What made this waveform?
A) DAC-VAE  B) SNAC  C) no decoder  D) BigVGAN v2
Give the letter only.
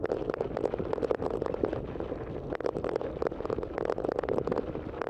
C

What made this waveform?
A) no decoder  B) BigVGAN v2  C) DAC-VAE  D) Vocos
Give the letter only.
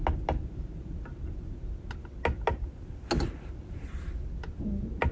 A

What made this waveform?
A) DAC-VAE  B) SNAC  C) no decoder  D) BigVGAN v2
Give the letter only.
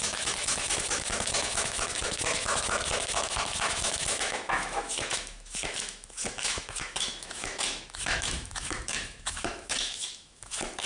A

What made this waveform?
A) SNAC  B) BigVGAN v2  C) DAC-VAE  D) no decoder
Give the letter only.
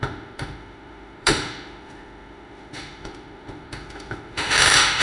C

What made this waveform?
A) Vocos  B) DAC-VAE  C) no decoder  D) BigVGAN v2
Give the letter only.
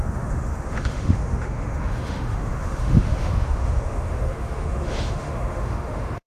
B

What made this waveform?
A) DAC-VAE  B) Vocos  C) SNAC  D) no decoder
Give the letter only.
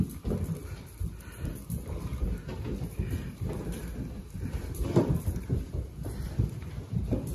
D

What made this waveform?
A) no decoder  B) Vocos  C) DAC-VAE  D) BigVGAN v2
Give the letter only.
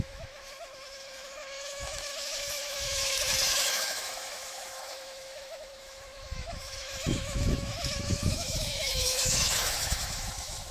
C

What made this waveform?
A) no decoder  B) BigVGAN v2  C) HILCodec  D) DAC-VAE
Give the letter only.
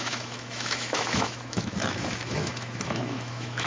D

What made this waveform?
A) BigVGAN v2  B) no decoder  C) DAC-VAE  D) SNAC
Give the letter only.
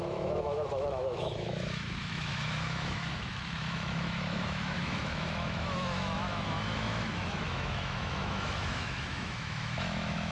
C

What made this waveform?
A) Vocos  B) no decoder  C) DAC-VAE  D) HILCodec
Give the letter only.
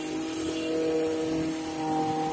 B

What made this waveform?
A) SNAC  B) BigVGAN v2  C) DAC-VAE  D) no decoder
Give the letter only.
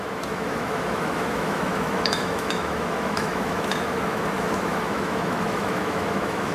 C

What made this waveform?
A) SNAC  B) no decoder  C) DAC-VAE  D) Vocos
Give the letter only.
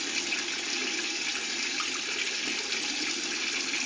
B